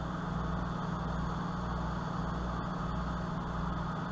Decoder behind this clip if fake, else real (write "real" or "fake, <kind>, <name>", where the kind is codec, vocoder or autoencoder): real